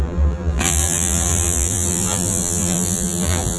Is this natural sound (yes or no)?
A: no